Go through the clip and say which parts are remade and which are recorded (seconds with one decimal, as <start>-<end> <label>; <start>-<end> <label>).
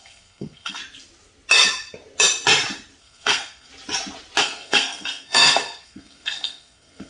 0.0-0.8 remade; 0.8-3.0 recorded; 3.0-3.7 remade; 3.7-4.4 recorded; 4.4-7.1 remade